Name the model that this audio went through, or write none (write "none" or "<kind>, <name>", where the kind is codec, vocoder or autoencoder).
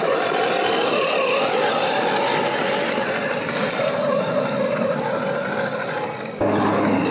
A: none